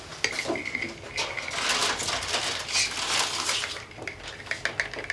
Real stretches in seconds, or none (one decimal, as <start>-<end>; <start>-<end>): 0.0-5.1